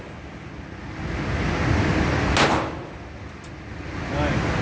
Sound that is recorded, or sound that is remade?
recorded